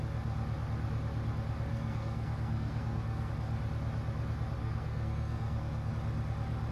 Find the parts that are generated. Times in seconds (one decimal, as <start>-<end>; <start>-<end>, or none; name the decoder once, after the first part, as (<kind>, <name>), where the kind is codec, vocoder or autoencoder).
1.7-3.3 (codec, SNAC); 4.6-5.9